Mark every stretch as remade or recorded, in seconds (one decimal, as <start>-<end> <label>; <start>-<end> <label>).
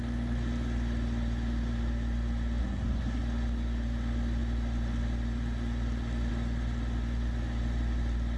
0.0-2.6 recorded; 2.6-3.2 remade; 3.2-8.4 recorded